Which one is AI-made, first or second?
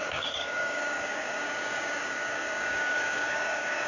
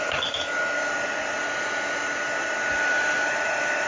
first